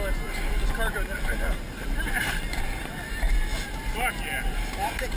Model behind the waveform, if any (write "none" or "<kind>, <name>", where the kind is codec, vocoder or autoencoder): none